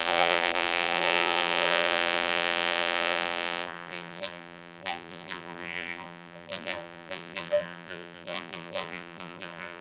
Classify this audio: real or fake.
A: fake